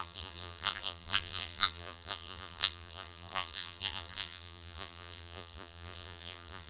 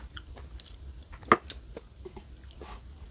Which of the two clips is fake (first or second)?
first